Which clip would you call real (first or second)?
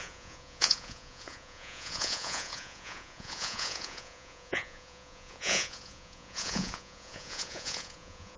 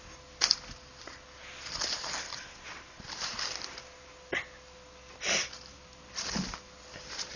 second